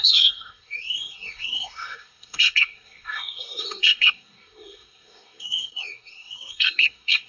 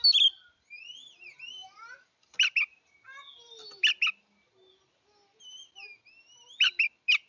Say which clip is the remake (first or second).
first